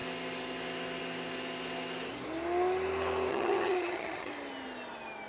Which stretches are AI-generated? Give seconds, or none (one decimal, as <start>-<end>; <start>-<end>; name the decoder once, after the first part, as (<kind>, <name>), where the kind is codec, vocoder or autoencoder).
3.3-4.3 (vocoder, HiFi-GAN)